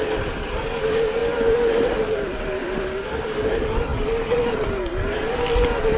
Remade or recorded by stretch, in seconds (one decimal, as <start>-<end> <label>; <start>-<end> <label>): 0.0-6.0 recorded